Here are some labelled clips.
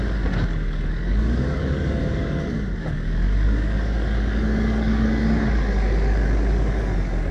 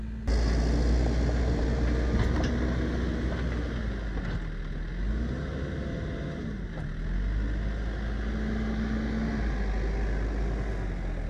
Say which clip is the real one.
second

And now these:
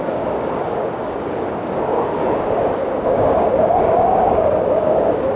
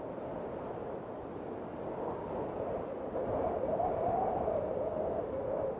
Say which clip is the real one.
second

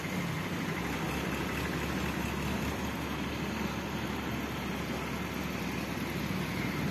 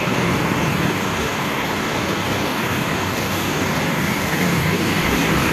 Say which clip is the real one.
first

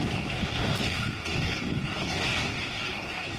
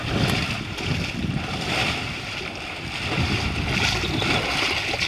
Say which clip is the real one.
second